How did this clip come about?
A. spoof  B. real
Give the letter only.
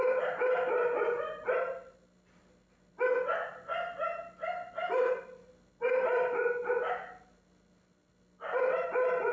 B